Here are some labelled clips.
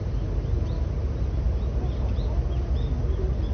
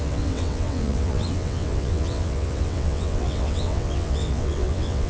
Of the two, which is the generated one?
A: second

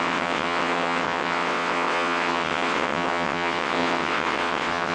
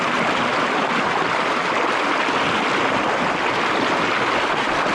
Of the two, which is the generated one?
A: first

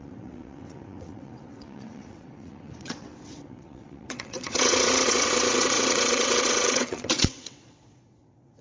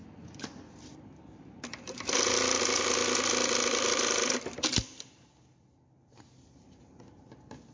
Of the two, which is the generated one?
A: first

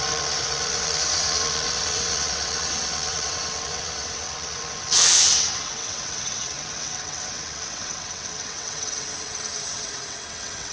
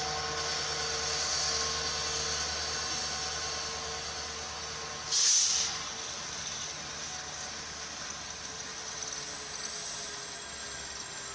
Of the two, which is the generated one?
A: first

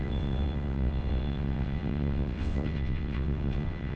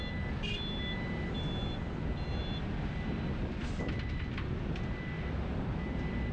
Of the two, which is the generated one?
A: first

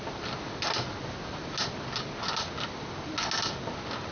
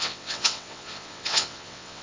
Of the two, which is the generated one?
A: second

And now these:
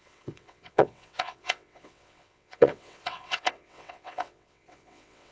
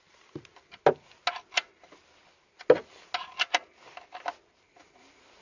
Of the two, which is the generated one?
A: first